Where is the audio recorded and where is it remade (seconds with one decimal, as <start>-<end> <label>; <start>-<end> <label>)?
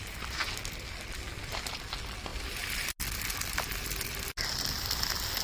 0.0-5.4 recorded